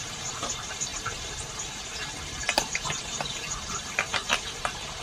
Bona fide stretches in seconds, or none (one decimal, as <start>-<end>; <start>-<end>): none